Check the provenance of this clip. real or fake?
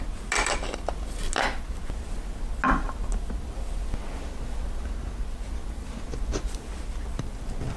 real